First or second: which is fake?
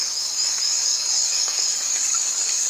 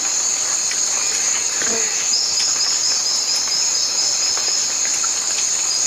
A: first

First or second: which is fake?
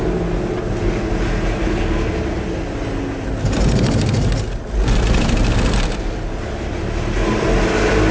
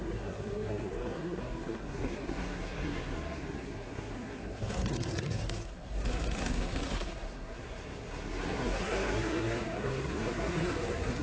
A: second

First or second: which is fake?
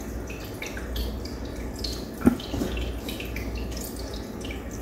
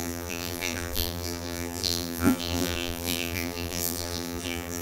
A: second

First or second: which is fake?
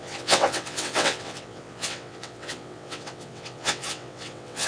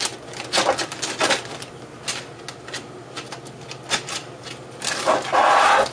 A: first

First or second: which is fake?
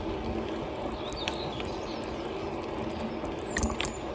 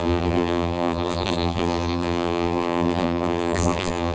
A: second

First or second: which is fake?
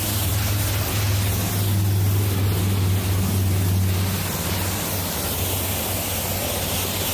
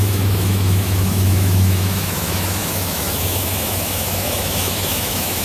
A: second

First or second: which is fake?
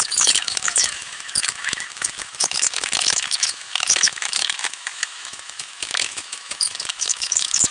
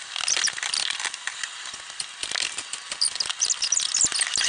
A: first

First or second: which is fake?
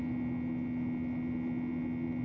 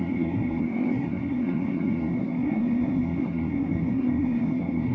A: second